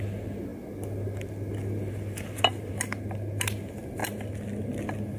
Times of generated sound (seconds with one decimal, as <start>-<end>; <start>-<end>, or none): none